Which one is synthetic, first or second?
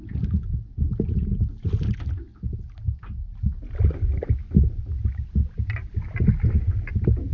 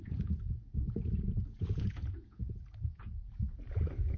second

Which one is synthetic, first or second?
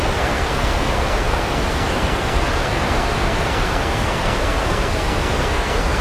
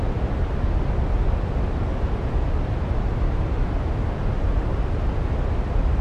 first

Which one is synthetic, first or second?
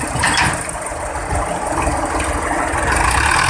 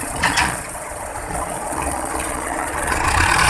second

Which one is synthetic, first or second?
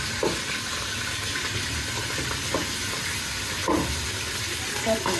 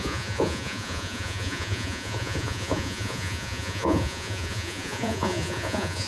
second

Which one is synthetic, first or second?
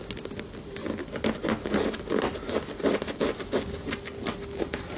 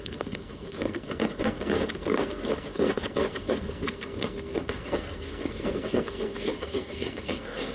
second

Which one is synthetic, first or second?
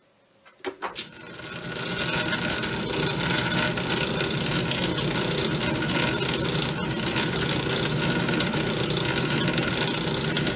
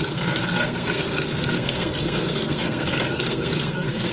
second